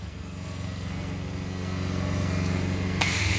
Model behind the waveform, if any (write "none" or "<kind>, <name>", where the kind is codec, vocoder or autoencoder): codec, SNAC